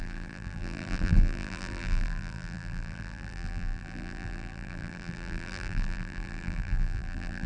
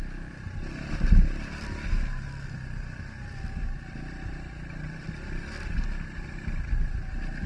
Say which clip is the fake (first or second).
first